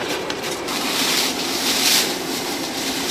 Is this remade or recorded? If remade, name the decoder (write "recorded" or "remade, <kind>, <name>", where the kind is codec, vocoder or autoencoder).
remade, vocoder, BigVGAN v2